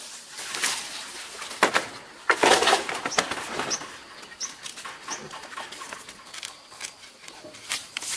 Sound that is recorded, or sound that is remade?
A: recorded